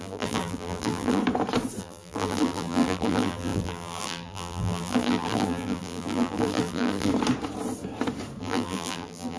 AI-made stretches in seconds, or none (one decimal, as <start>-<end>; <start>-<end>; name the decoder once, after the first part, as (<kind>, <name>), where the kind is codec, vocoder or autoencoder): 0.0-1.2 (vocoder, BigVGAN v2); 1.8-7.1; 8.4-9.4

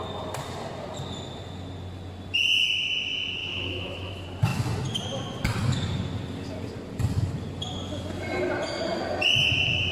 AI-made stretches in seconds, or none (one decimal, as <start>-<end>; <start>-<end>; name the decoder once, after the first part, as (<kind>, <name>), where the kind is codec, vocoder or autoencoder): 3.4-4.1 (autoencoder, DAC-VAE)

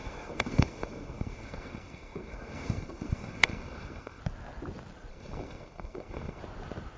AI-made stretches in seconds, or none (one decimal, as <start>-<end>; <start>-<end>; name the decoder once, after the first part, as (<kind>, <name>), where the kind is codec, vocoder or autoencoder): 0.0-4.2 (codec, SNAC); 5.1-6.4

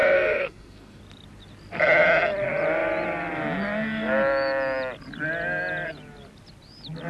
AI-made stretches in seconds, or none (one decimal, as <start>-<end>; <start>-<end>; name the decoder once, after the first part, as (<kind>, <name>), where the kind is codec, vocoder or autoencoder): 0.0-1.0 (codec, SNAC)